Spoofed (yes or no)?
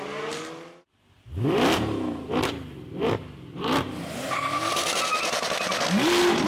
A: no